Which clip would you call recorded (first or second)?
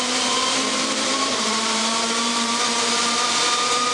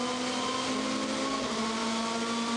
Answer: second